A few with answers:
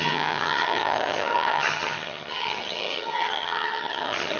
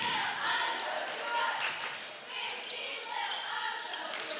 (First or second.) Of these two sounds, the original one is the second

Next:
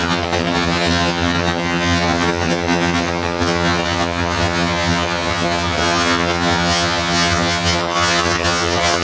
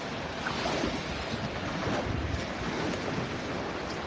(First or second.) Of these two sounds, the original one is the second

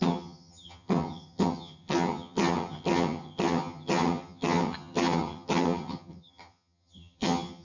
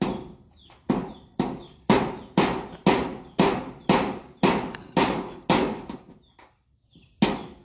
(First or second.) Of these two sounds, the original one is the second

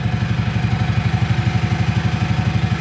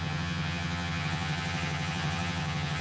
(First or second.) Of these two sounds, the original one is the first